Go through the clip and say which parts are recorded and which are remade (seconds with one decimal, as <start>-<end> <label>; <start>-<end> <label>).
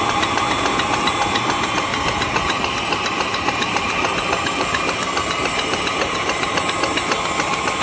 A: 0.0-1.9 recorded; 1.9-6.6 remade; 6.6-7.8 recorded